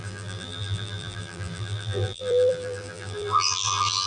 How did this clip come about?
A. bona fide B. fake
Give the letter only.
B